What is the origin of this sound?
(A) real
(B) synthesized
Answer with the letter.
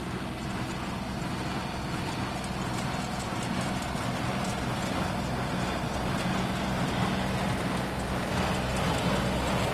A